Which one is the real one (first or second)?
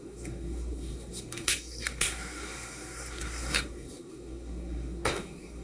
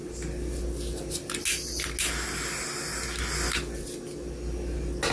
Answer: second